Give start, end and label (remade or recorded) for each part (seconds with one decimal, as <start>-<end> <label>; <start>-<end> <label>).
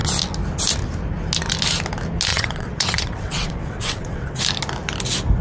0.0-2.3 recorded; 2.3-4.4 remade; 4.4-5.4 recorded